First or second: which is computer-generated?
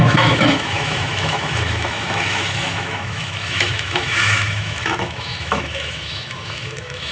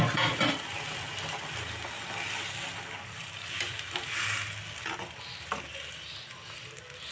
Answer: first